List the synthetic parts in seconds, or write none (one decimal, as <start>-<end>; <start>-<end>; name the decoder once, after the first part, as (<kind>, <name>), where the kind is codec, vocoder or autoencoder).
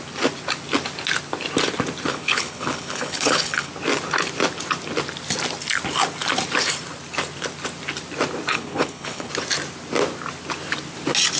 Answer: 2.1-3.7 (codec, HILCodec); 8.5-9.3